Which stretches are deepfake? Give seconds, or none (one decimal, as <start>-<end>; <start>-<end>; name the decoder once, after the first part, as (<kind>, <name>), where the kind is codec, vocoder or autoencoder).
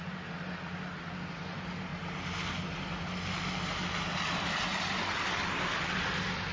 none